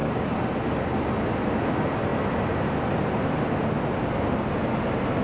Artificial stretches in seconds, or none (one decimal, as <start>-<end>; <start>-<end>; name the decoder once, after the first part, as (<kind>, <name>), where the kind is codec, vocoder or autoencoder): none